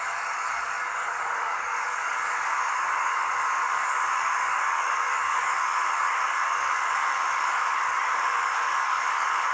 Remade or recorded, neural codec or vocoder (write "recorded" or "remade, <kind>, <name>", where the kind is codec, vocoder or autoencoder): remade, codec, DAC